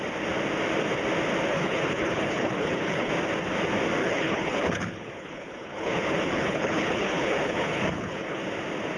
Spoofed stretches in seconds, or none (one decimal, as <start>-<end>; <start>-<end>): 1.5-3.1; 4.0-8.4